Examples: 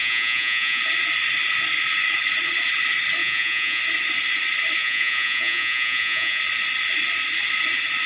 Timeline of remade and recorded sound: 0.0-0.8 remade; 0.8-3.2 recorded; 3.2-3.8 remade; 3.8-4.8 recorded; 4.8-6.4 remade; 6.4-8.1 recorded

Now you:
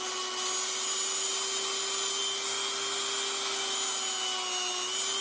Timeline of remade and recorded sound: 0.0-5.2 recorded

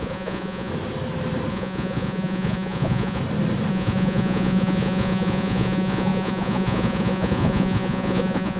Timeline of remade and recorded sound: 0.0-0.7 remade; 0.7-1.5 recorded; 1.5-3.2 remade; 3.2-3.7 recorded; 3.7-8.6 remade

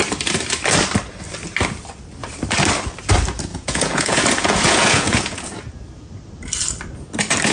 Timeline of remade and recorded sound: 0.0-3.5 recorded; 3.5-5.6 remade; 5.6-7.5 recorded